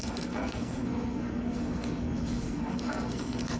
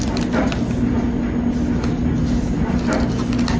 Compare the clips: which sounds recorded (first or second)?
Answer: second